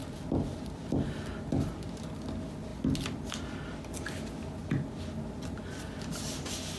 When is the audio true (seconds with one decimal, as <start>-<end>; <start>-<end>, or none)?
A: 0.0-6.8